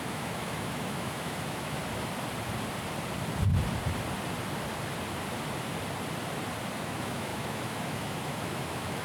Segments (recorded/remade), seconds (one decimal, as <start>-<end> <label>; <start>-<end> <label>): 0.0-1.8 remade; 1.8-6.8 recorded; 6.8-9.0 remade